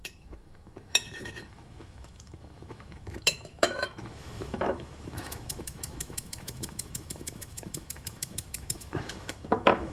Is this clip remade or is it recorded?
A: remade